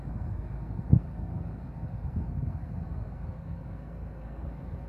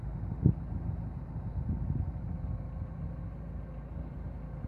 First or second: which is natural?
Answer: second